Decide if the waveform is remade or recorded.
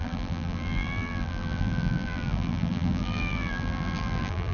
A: remade